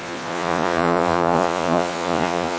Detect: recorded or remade remade